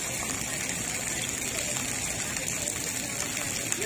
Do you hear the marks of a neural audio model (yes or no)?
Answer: no